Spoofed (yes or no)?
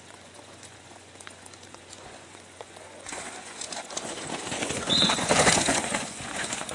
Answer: yes